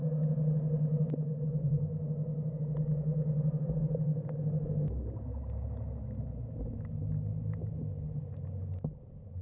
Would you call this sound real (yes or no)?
yes